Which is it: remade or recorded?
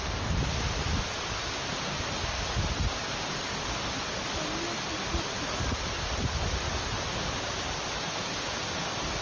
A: recorded